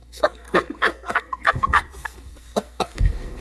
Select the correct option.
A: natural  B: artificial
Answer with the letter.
B